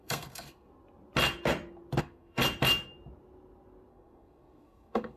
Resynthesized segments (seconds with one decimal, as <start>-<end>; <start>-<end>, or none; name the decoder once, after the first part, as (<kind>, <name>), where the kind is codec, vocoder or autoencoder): 0.0-0.7 (codec, SNAC); 2.0-2.4; 3.9-5.2